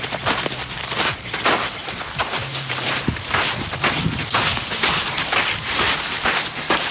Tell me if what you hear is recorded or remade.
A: remade